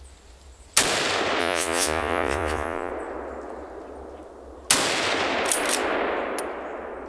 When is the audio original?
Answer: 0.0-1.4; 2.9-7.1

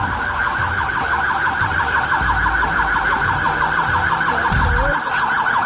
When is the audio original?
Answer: 0.0-0.4; 3.8-5.7